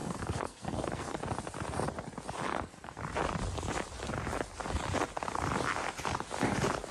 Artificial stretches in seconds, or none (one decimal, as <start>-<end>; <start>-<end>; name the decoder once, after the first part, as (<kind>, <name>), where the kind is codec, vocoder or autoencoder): 0.0-1.2 (codec, SNAC); 2.5-3.0